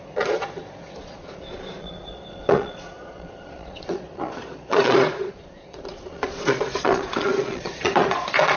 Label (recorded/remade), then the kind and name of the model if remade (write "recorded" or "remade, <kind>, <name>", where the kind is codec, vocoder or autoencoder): remade, vocoder, Vocos